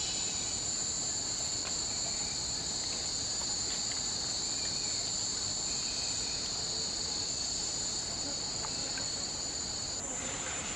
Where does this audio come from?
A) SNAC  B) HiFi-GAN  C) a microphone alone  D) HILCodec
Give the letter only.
C